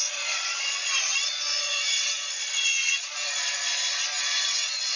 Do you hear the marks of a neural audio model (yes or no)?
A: yes